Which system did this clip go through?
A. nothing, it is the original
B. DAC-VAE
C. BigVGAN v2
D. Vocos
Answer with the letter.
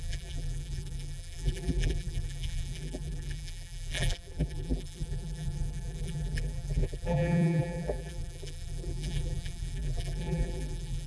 C